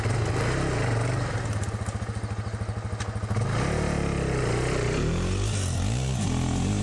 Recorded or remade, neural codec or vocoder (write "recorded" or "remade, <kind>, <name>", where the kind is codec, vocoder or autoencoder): recorded